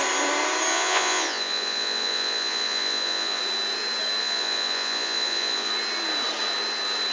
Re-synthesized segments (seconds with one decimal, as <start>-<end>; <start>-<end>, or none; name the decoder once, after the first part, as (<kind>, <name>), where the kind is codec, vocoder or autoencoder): 0.7-3.4 (vocoder, Vocos); 4.2-5.7